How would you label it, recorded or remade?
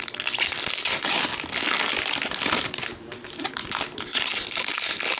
recorded